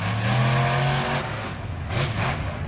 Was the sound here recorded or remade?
recorded